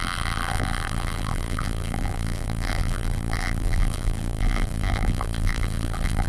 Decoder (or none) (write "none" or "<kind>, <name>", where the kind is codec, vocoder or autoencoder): vocoder, BigVGAN v2